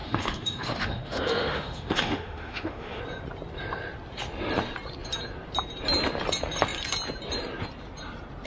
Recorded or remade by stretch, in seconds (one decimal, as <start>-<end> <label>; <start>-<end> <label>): 0.0-3.0 remade; 3.0-8.5 recorded

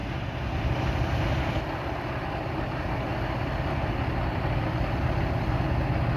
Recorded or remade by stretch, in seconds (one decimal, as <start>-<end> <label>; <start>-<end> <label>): 0.0-2.6 remade; 2.6-6.2 recorded

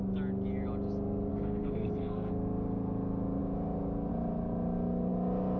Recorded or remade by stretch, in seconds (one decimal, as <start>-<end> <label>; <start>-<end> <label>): 0.0-1.3 recorded; 1.3-2.3 remade; 2.3-5.6 recorded